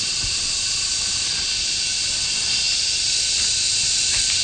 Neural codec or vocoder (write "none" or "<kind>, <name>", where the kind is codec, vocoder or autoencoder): none